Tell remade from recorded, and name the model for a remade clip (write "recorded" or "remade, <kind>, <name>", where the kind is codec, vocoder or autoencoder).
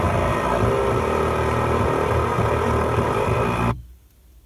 recorded